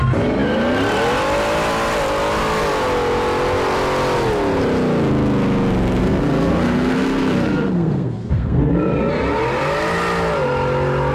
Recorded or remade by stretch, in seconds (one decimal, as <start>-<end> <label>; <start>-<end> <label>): 0.0-6.0 recorded; 6.0-8.7 remade; 8.7-11.1 recorded